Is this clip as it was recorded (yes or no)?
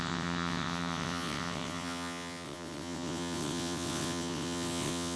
no